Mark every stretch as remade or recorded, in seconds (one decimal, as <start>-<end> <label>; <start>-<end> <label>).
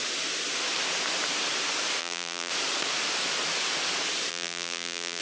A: 0.0-2.0 recorded; 2.0-2.5 remade; 2.5-4.3 recorded; 4.3-5.2 remade